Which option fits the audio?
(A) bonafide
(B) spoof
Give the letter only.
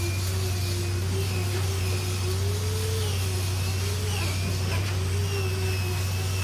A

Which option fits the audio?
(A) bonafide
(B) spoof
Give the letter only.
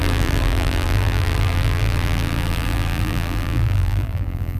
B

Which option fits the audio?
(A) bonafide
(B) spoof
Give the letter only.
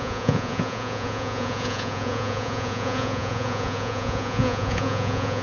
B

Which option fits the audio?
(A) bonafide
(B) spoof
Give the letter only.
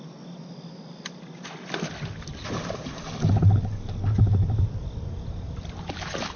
A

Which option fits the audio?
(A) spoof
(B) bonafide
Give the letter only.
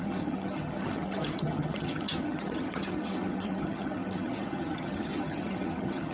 A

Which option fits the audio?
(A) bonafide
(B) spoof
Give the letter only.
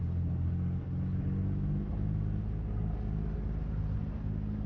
A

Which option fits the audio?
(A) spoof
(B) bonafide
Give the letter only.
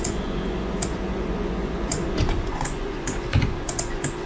A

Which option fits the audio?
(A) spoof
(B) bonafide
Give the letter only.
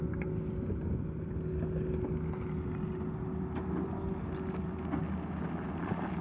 B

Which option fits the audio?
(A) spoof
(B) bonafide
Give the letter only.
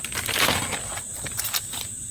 B